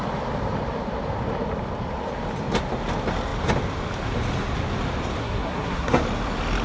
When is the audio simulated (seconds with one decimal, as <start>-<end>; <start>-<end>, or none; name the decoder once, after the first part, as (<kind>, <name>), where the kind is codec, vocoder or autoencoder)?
5.2-6.0 (codec, SNAC)